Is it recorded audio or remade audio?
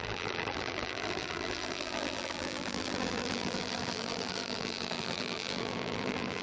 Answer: remade